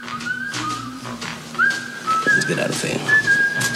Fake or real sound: real